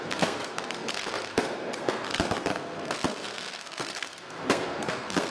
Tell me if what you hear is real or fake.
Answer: fake